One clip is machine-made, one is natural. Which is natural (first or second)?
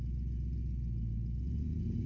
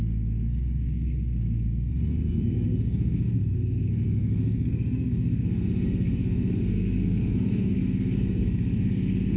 first